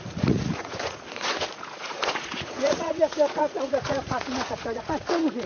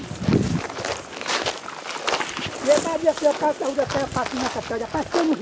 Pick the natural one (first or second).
second